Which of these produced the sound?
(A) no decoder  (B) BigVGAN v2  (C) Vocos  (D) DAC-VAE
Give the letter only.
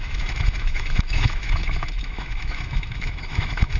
D